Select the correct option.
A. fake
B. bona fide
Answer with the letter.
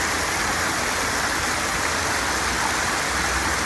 B